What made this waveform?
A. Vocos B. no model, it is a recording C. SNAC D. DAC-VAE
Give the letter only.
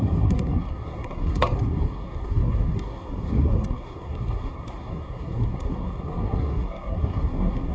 C